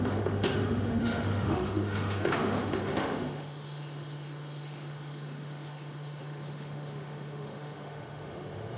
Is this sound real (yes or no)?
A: no